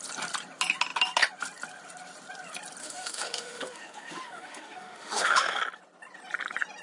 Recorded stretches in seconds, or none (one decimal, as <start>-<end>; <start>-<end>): 0.0-2.8; 5.6-6.8